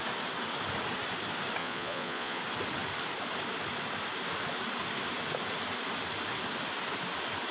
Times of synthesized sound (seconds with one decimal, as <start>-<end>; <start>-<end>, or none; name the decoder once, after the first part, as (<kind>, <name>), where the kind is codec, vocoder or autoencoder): 1.6-2.4 (vocoder, Vocos)